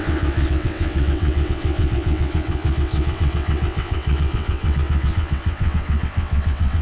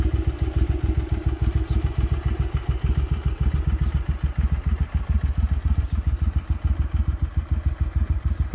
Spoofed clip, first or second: first